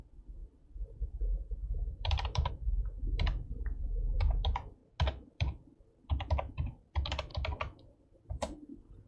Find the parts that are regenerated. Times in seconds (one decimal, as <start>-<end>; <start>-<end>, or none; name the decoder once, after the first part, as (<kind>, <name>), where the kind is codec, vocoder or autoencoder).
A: 0.0-4.8 (vocoder, BigVGAN v2); 5.3-9.1